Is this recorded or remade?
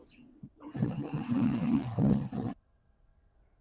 remade